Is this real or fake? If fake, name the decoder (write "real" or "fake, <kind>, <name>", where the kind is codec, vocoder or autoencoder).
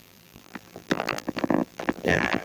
fake, vocoder, BigVGAN v2